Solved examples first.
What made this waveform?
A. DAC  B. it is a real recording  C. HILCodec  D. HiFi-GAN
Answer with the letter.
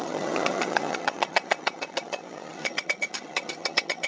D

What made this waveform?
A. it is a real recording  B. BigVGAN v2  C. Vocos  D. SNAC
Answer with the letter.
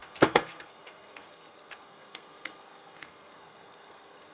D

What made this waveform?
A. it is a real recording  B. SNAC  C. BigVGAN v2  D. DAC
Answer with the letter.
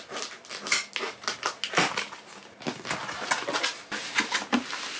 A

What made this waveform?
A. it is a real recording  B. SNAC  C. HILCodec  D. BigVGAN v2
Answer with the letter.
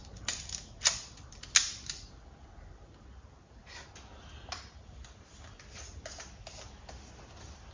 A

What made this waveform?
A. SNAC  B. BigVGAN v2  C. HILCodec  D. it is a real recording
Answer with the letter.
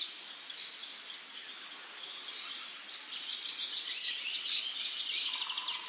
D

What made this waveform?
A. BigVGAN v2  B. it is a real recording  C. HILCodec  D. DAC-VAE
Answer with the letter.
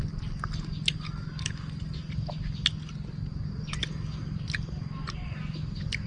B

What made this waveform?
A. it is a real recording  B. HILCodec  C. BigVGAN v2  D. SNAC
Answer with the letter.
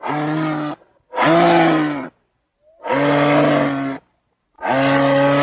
A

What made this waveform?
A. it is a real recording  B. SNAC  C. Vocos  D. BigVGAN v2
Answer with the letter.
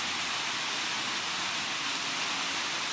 A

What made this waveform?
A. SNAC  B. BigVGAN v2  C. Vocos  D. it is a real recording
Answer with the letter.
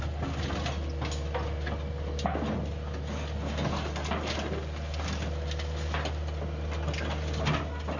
D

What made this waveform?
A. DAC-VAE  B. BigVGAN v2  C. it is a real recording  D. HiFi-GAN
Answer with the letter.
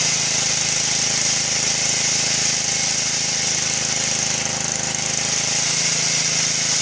C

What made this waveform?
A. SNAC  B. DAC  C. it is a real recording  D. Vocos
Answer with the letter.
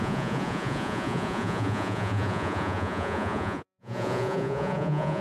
D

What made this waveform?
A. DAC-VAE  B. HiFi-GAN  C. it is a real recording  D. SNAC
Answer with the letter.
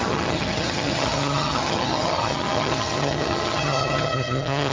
B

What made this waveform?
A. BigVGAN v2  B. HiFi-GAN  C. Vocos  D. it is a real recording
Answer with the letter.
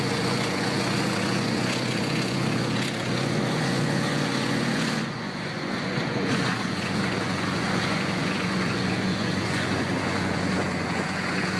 C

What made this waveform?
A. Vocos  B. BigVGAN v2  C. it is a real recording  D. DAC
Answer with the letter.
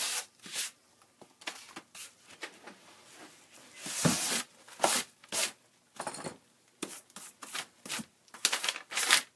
C